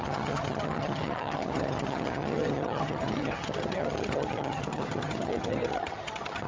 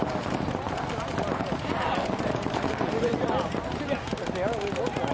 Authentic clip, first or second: second